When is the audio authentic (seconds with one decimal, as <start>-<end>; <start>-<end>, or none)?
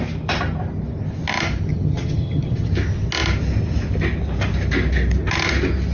0.0-1.7; 2.7-5.9